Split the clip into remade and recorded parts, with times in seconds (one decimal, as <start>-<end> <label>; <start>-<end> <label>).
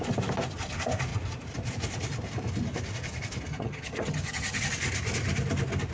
0.0-3.5 recorded; 3.5-4.6 remade; 4.6-5.9 recorded